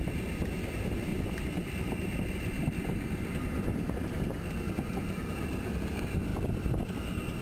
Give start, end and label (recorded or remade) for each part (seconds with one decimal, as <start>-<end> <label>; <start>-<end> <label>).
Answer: 0.0-1.1 recorded; 1.1-4.9 remade; 4.9-6.3 recorded; 6.3-6.9 remade; 6.9-7.4 recorded